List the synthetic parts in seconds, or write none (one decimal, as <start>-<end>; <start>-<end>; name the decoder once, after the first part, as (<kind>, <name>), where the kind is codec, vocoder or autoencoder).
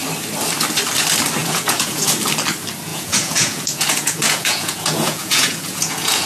1.4-2.1 (vocoder, Vocos); 2.9-6.3